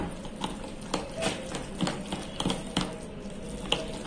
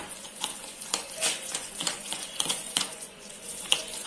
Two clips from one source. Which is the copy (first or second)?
second